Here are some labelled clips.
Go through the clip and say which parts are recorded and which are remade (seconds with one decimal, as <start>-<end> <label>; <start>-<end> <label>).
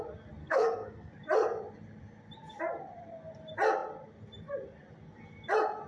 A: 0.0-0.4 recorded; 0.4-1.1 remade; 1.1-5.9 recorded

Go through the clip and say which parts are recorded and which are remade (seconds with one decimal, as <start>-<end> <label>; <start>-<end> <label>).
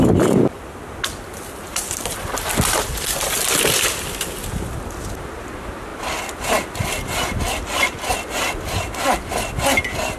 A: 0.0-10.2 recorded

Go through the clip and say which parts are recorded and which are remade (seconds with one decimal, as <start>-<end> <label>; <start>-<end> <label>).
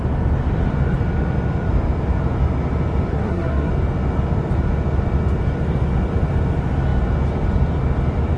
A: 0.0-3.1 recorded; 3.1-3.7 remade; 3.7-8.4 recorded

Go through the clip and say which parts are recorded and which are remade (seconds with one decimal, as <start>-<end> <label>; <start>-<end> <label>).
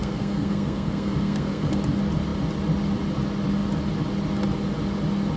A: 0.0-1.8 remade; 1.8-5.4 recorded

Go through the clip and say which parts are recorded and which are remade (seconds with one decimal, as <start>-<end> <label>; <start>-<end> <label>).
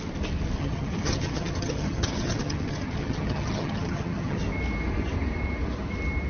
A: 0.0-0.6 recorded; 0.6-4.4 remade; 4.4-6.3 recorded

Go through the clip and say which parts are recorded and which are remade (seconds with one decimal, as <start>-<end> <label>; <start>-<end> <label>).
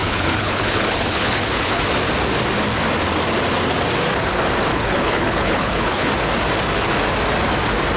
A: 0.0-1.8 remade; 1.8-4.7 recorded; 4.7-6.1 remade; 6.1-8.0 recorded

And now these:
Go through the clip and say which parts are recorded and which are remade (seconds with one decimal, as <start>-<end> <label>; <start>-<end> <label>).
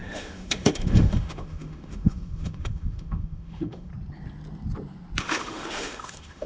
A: 0.0-3.9 remade; 3.9-5.2 recorded; 5.2-6.5 remade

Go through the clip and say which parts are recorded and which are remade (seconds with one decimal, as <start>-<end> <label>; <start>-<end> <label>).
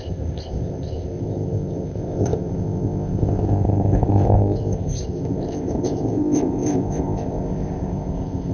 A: 0.0-8.5 remade